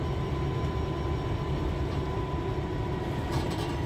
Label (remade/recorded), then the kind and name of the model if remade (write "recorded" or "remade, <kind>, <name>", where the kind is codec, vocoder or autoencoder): recorded